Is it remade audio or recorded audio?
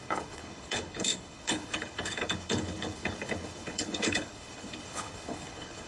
remade